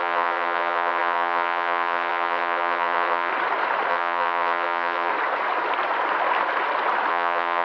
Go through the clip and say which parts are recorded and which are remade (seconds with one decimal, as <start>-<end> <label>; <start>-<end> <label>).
0.0-3.3 remade; 3.3-3.9 recorded; 3.9-5.1 remade; 5.1-7.1 recorded; 7.1-7.6 remade